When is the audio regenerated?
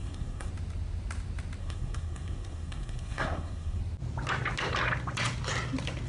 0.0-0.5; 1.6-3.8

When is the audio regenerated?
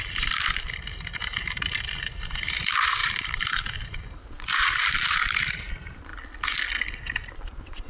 0.0-6.1; 7.3-7.9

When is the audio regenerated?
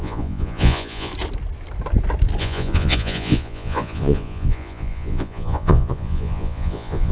0.0-1.1; 2.4-7.1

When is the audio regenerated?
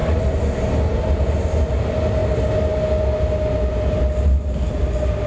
none